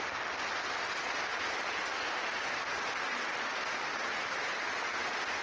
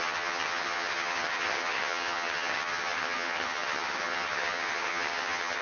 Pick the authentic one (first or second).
first